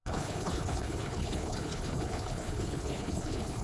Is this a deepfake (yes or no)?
yes